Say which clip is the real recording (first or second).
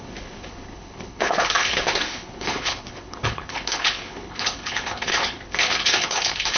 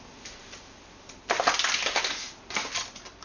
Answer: second